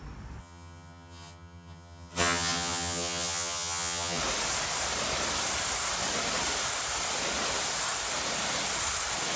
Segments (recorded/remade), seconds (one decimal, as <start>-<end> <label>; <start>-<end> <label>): 0.0-0.4 recorded; 0.4-4.2 remade; 4.2-9.4 recorded